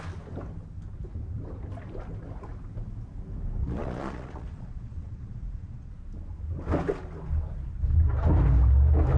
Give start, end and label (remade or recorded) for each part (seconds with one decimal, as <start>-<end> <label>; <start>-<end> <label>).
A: 0.0-3.6 recorded; 3.6-5.9 remade; 5.9-9.2 recorded